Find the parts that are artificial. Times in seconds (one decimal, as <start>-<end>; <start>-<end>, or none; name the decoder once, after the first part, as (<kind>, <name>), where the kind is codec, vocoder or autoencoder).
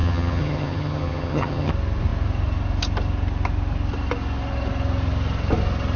0.0-1.7 (vocoder, HiFi-GAN)